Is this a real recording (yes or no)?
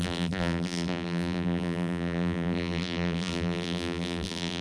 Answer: no